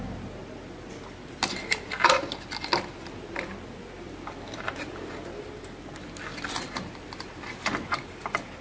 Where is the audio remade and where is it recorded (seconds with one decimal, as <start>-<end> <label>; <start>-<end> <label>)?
0.0-8.6 recorded